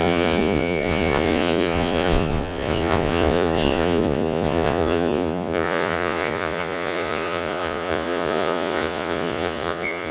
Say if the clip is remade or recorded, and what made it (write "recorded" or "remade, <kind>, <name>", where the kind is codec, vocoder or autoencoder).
remade, vocoder, Vocos